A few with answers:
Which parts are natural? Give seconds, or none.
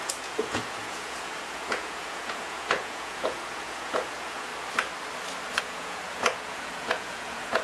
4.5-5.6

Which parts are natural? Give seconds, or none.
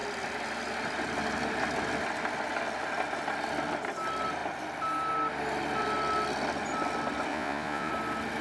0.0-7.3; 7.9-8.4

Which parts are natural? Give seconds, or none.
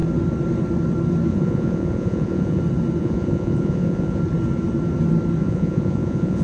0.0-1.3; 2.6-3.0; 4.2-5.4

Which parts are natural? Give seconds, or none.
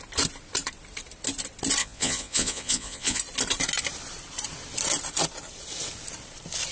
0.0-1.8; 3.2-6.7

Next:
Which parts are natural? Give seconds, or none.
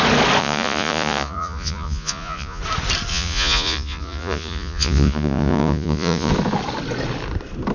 0.0-0.4; 2.6-3.1; 6.3-7.7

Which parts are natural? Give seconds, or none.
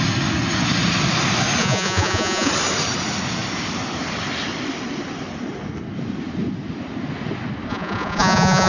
0.0-1.6; 2.5-7.7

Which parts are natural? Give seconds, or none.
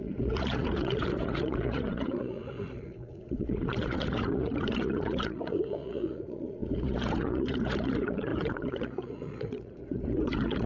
none